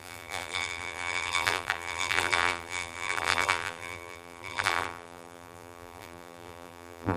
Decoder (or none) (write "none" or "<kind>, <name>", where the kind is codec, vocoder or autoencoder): vocoder, BigVGAN v2